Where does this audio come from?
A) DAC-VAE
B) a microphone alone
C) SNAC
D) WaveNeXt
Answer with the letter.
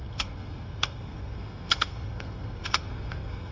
C